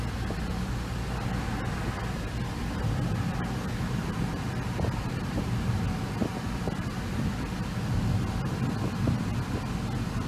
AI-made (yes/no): no